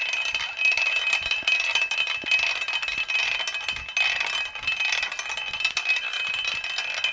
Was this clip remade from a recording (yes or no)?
no